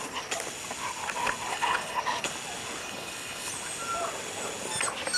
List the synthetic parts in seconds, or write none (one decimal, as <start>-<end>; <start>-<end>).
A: 1.5-2.0; 2.8-3.5